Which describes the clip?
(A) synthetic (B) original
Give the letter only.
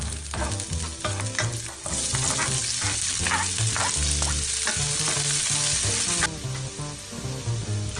B